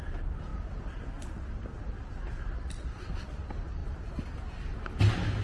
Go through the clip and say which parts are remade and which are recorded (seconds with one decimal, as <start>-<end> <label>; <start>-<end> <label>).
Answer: 0.0-5.4 recorded